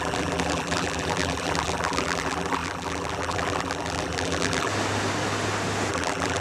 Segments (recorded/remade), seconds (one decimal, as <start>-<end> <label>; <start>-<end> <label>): 0.0-4.7 remade; 4.7-5.9 recorded; 5.9-6.4 remade